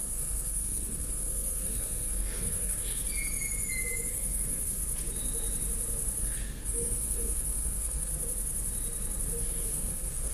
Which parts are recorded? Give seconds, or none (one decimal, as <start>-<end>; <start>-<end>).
3.0-4.1; 4.8-6.2; 8.1-9.4